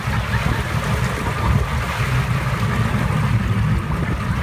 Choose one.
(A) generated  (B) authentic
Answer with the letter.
B